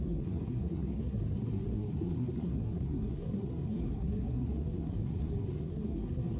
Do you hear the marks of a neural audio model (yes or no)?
yes